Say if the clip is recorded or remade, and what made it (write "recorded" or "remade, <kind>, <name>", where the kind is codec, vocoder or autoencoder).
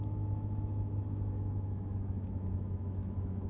remade, autoencoder, DAC-VAE